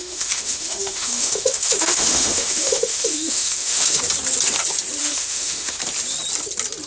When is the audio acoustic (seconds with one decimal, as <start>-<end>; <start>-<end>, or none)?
4.0-5.0; 5.8-6.9